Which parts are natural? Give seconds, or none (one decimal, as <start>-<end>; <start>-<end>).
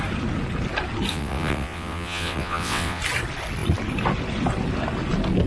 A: 0.0-1.1; 3.0-5.5